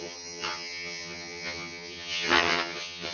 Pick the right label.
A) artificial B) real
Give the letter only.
A